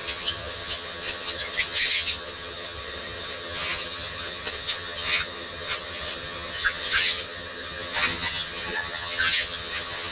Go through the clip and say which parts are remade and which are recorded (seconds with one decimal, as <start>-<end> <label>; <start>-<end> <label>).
0.0-10.1 remade